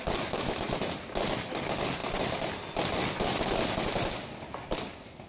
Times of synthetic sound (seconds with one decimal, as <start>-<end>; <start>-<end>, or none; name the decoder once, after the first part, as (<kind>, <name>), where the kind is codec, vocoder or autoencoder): none